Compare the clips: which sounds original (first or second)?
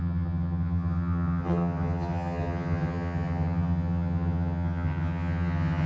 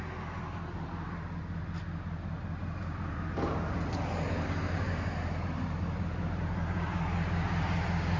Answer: second